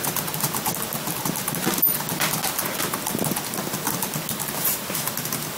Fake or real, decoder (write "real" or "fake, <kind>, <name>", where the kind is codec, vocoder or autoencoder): real